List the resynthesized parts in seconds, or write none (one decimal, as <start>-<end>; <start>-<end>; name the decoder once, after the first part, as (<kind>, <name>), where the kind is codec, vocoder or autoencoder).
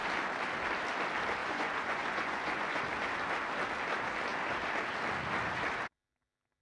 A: 1.4-2.8 (vocoder, Vocos)